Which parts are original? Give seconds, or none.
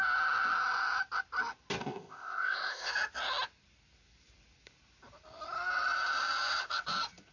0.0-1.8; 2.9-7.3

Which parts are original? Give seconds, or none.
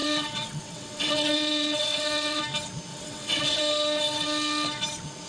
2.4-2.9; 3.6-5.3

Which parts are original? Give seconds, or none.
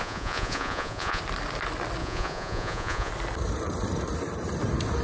1.2-2.0; 3.1-5.0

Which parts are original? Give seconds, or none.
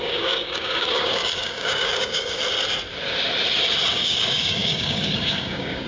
2.4-3.9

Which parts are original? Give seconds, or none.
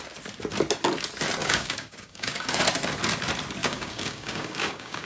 0.0-1.4; 2.6-3.6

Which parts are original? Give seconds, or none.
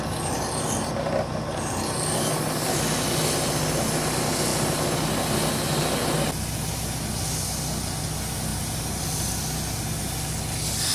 0.0-8.5; 9.0-10.9